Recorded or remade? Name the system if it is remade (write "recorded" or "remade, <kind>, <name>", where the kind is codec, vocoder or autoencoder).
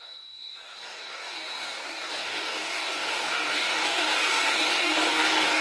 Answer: remade, codec, DAC